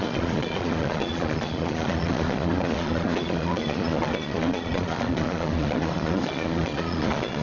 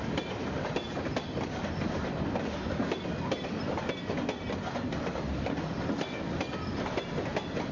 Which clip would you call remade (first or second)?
first